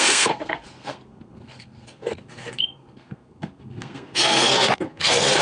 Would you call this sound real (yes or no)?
no